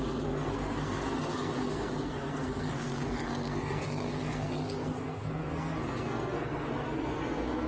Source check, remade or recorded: remade